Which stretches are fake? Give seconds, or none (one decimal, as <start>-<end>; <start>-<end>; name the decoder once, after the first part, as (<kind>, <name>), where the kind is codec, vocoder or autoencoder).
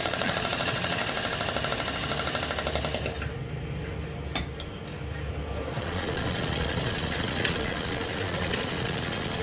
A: 0.0-1.0 (vocoder, Vocos); 5.8-9.4